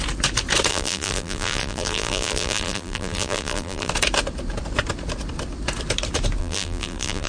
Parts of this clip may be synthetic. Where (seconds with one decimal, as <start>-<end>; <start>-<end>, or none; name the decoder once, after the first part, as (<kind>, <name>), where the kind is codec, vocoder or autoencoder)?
0.7-3.9 (vocoder, BigVGAN v2); 6.4-7.3